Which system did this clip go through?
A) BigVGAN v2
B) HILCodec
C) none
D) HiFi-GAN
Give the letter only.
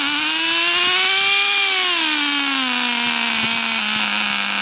C